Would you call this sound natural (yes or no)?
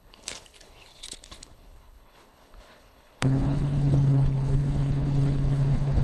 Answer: no